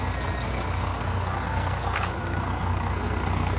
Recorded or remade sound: remade